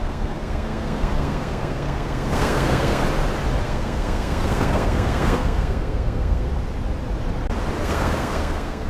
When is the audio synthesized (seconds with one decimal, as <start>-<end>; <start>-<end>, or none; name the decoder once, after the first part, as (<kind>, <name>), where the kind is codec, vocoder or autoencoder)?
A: 0.0-3.0 (codec, SNAC); 3.6-6.5; 7.8-8.9